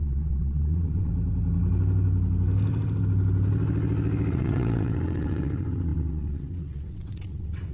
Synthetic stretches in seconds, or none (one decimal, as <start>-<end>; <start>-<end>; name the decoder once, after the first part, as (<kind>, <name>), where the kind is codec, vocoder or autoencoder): 0.0-1.1 (vocoder, WaveNeXt); 4.3-7.7